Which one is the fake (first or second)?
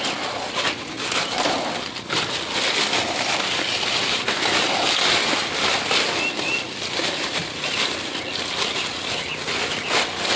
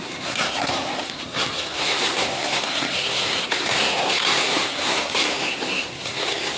second